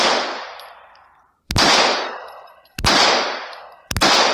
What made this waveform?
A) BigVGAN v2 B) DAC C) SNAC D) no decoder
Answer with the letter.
A